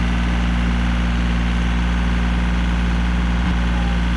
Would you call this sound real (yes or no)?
yes